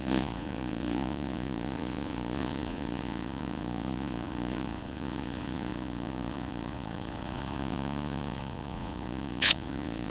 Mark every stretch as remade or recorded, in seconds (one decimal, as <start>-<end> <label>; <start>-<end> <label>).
0.0-10.1 remade